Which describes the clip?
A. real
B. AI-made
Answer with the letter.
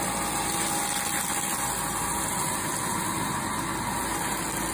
A